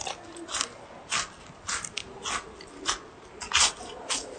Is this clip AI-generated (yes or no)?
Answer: no